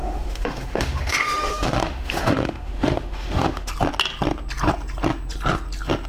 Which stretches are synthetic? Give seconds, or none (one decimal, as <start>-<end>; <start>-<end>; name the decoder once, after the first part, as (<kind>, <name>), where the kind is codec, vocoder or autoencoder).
0.0-3.7 (autoencoder, DAC-VAE)